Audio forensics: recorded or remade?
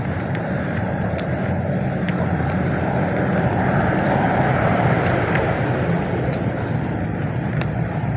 remade